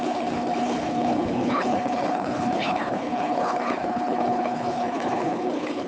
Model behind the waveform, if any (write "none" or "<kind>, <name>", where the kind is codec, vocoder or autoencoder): codec, HILCodec